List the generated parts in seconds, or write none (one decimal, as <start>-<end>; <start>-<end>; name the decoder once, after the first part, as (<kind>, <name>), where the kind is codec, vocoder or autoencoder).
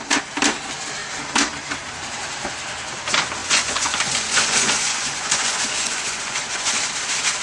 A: 3.4-6.9 (vocoder, Vocos)